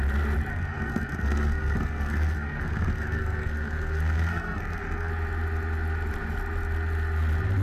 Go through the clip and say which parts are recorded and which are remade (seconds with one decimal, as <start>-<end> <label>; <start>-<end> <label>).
0.0-0.5 recorded; 0.5-5.1 remade; 5.1-7.6 recorded